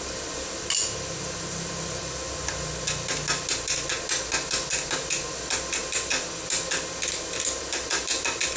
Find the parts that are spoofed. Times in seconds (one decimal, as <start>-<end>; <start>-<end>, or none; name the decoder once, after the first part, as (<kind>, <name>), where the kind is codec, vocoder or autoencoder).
none